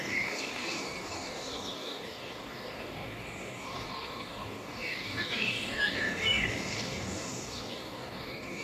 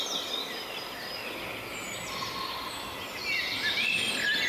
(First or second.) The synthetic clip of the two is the first